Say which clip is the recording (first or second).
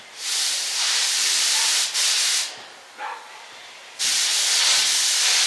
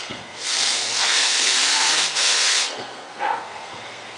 first